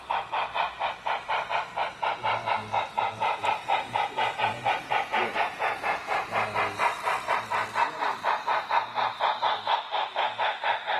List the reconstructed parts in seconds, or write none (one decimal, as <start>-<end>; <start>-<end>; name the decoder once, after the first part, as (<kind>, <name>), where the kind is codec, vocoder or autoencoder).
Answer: 3.2-6.3 (vocoder, Vocos)